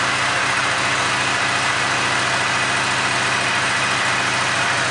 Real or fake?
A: real